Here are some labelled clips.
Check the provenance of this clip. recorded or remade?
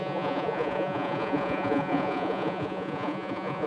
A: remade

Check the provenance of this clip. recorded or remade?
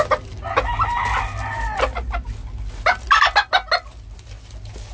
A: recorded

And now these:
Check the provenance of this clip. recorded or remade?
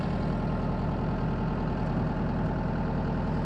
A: recorded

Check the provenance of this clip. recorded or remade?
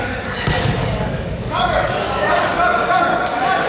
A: remade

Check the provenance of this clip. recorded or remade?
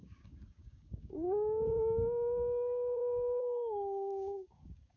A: remade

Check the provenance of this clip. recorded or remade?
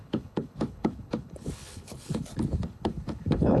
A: remade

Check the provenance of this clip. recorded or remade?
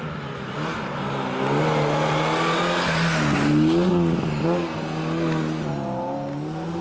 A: recorded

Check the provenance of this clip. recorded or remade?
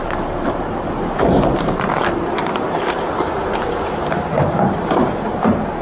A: remade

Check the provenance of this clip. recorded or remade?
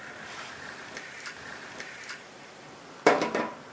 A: remade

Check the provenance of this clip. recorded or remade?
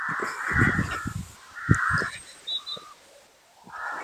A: recorded